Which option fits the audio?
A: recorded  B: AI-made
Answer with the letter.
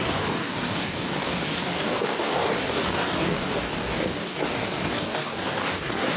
B